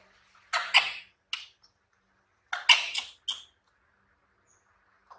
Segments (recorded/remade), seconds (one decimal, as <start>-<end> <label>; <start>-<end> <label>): 0.0-5.2 recorded

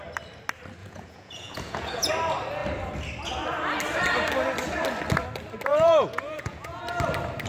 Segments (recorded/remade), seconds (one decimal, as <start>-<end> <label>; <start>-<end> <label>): 0.0-0.8 recorded; 0.8-2.1 remade; 2.1-5.7 recorded; 5.7-6.8 remade; 6.8-7.5 recorded

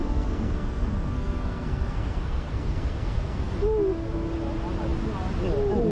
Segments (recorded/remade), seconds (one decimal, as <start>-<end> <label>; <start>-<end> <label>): 0.0-3.5 remade; 3.5-5.9 recorded

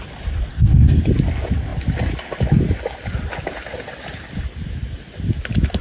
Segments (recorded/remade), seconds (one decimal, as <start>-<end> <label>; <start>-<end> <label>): 0.0-0.5 recorded; 0.5-1.0 remade; 1.0-5.8 recorded